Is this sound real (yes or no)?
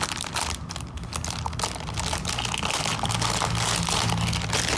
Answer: yes